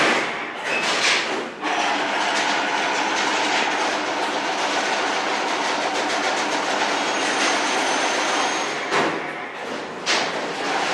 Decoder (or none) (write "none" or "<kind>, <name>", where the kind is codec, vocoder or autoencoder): none